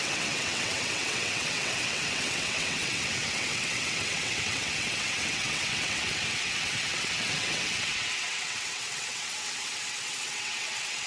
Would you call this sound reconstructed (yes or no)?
yes